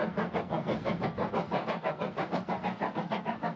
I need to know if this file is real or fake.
fake